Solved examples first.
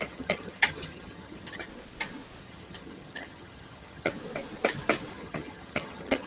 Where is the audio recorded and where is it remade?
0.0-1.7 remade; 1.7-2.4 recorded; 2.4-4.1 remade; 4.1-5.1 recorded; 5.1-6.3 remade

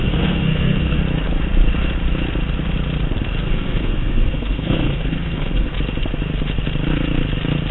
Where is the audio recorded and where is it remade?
0.0-1.0 remade; 1.0-3.4 recorded; 3.4-5.7 remade; 5.7-7.7 recorded